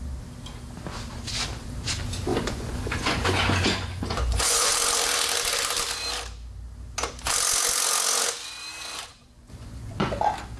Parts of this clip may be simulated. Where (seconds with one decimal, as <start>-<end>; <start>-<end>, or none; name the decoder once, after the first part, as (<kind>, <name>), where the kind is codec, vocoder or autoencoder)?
2.3-4.7 (vocoder, Vocos); 9.1-10.1